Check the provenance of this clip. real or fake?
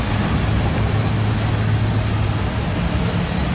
real